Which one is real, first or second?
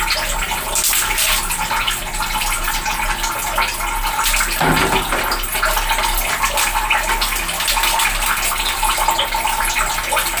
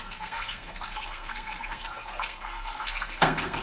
first